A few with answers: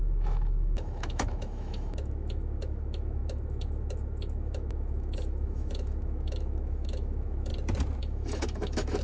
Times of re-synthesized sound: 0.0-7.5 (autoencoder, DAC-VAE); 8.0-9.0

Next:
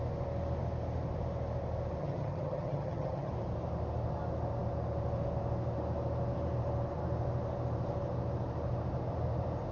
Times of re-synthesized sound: 2.0-3.3 (vocoder, HiFi-GAN)

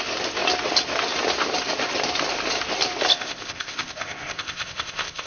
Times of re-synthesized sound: 3.1-5.3 (codec, ZipCodec)

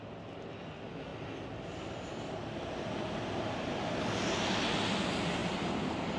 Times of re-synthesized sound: none

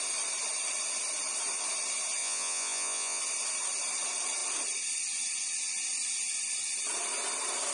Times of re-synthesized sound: 2.2-3.2 (vocoder, Vocos)